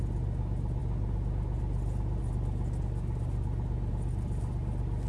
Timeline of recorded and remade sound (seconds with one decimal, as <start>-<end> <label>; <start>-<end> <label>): 0.0-5.1 recorded